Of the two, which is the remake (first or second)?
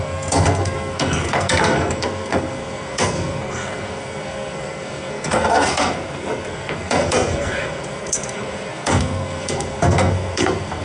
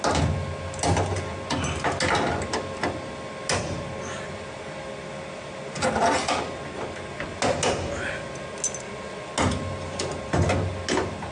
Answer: first